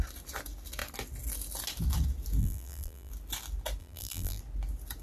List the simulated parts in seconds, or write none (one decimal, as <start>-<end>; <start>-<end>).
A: 2.4-3.1; 3.8-4.4